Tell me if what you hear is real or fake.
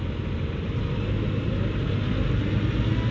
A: real